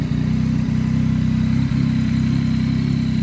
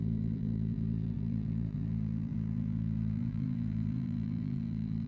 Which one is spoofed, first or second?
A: second